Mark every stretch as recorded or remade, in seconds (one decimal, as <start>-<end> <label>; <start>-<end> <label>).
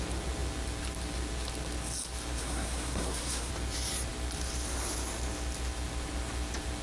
0.0-2.4 recorded; 2.4-3.5 remade; 3.5-6.8 recorded